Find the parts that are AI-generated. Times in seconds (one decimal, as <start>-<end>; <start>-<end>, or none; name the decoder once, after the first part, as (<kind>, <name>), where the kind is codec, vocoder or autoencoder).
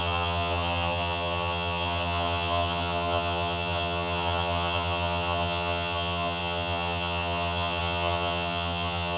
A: 0.0-9.2 (vocoder, HiFi-GAN)